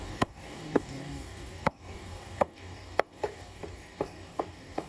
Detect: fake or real fake